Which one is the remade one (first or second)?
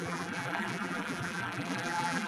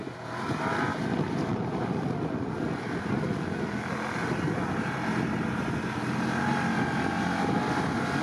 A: first